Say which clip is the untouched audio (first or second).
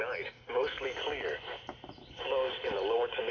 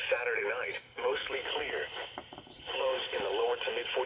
first